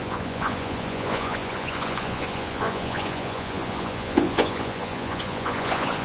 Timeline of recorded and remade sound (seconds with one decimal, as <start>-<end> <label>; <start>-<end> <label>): 0.0-6.0 remade